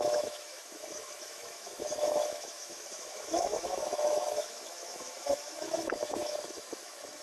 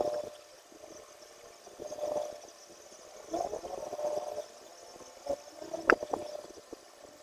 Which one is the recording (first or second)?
second